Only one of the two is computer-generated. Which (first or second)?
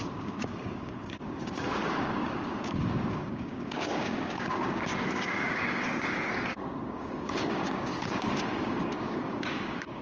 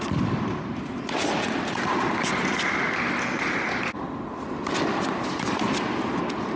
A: first